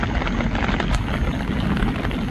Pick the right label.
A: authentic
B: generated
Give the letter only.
A